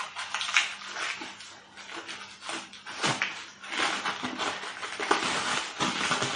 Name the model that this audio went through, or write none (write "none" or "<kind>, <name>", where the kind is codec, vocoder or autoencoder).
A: none